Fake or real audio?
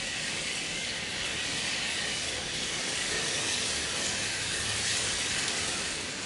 fake